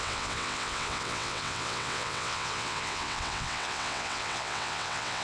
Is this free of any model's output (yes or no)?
no